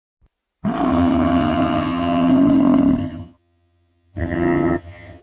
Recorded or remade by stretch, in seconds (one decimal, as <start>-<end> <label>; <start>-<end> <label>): 0.0-0.9 recorded; 0.9-2.3 remade; 2.3-3.0 recorded; 3.0-5.2 remade